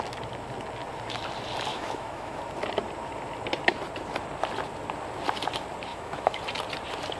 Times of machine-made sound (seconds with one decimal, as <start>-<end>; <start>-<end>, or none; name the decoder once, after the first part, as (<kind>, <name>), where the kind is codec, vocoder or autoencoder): 1.7-2.4 (autoencoder, DAC-VAE); 5.9-6.4